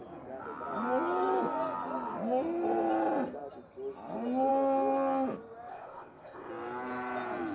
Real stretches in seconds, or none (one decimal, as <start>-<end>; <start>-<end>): 0.0-5.7; 6.5-7.5

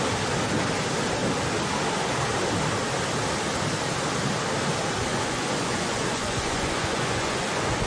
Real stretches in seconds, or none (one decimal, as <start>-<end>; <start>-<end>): 0.0-5.1

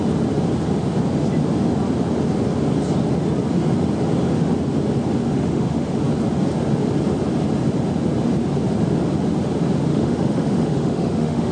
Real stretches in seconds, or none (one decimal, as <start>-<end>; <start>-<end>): 0.0-5.2; 6.0-9.9

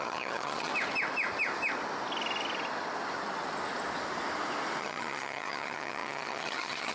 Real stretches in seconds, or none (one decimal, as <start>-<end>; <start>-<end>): 0.7-4.8

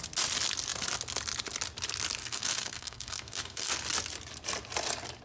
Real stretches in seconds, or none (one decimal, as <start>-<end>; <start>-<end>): 0.0-2.2; 3.7-5.2

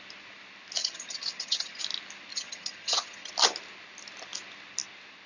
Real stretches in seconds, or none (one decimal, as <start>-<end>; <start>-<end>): 0.0-0.8; 1.8-2.3; 3.3-5.3